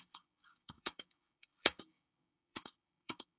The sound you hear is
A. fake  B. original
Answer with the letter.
A